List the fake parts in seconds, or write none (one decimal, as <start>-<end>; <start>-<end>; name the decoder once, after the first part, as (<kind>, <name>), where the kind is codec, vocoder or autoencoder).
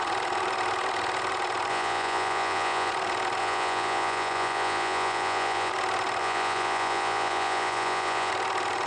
1.7-2.9 (vocoder, Vocos); 3.4-5.7; 6.2-8.3